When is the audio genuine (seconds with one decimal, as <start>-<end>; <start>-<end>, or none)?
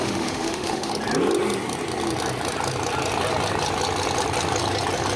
0.9-5.2